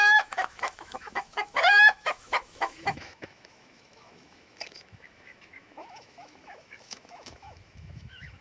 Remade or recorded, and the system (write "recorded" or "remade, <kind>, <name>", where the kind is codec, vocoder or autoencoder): remade, autoencoder, DAC-VAE